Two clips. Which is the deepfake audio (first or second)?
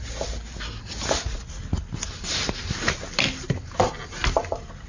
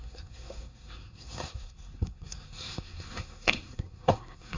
second